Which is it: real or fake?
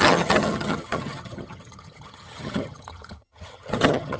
fake